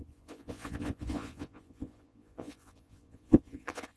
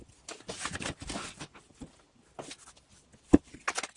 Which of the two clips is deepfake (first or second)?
first